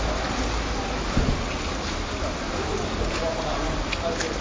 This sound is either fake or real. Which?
real